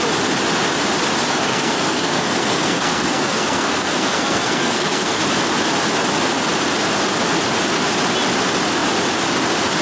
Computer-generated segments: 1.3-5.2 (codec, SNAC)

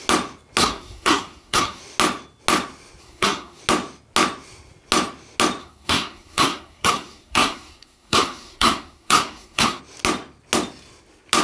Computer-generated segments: 0.6-1.8 (codec, SNAC); 3.0-3.6; 5.6-9.8

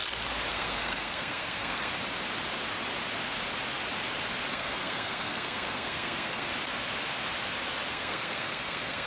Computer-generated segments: 0.5-1.9 (codec, SNAC); 4.5-6.5; 7.9-9.1

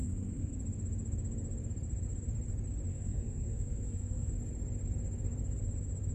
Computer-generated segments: 0.0-0.5 (codec, SNAC); 2.9-4.3

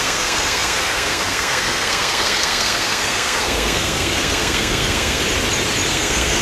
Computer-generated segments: 0.0-5.2 (codec, SNAC); 5.9-6.4

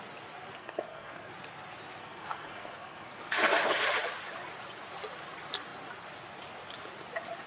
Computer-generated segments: 0.6-1.3 (codec, SNAC); 2.0-3.3

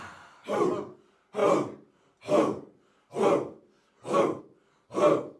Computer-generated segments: none